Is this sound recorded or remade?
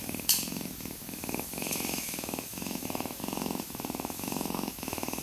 remade